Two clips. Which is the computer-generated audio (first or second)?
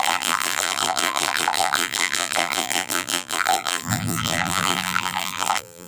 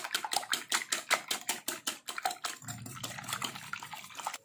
first